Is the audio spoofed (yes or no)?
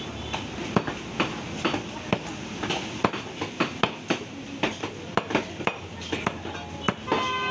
no